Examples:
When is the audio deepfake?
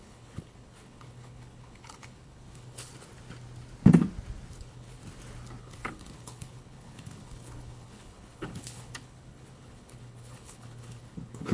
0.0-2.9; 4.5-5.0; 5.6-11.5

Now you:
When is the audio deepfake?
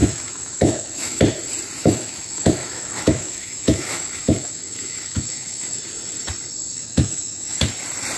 0.0-1.2; 1.8-5.8; 6.7-7.6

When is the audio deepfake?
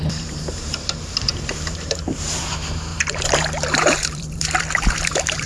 0.0-5.5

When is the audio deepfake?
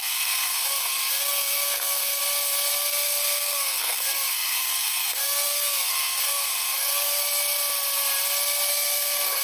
0.0-2.2; 2.7-7.2; 8.7-9.4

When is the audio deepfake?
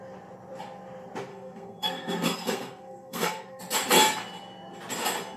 1.3-3.6